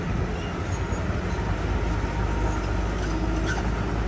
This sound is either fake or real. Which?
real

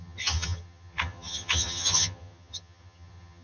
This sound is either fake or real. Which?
fake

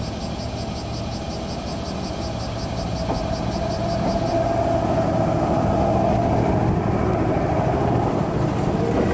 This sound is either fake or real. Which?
real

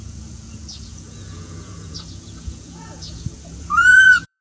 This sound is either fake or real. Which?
fake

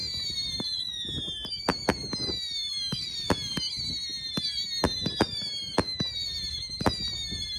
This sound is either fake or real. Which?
real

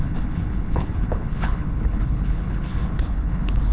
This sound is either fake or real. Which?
fake